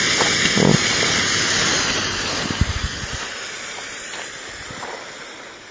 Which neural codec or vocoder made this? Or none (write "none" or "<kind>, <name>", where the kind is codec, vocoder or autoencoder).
none